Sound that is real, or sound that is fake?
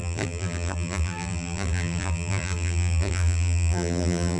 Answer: fake